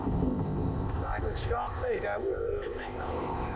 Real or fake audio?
fake